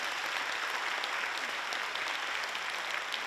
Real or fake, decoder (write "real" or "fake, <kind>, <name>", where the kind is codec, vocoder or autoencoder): real